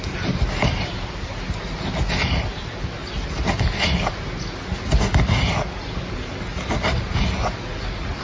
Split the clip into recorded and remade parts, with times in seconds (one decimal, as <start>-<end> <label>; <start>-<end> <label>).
0.0-8.2 recorded